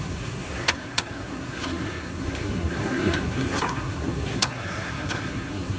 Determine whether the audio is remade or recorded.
remade